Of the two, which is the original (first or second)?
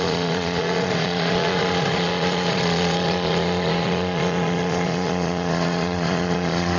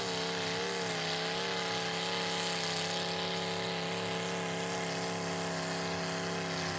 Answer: second